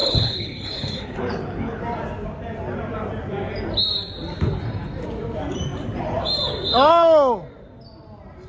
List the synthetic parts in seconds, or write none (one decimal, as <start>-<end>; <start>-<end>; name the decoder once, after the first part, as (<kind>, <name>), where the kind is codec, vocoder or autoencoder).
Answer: 0.0-1.8 (codec, HILCodec)